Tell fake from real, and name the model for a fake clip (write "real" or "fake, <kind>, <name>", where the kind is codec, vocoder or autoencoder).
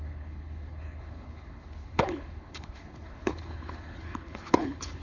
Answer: fake, codec, HILCodec